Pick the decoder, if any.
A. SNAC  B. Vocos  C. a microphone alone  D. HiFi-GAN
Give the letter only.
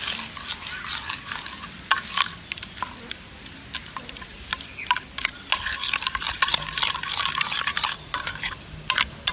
C